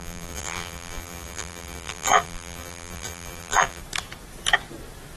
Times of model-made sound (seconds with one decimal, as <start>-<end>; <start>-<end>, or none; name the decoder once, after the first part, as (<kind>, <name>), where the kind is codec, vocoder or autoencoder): 0.0-3.8 (vocoder, BigVGAN v2)